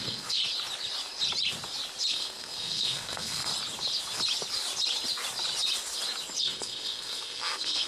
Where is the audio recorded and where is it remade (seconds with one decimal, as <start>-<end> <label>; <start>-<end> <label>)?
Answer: 0.0-0.4 remade; 0.4-2.1 recorded; 2.1-3.5 remade; 3.5-6.4 recorded; 6.4-7.9 remade